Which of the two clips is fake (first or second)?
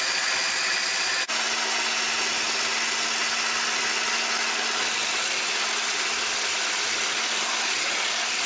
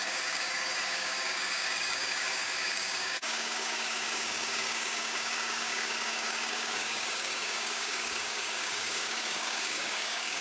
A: second